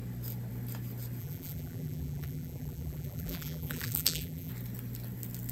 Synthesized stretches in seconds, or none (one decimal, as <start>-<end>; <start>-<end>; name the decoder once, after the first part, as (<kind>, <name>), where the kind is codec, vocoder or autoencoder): 1.2-4.5 (vocoder, BigVGAN v2)